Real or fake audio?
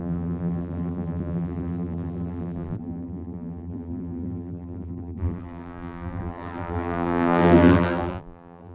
fake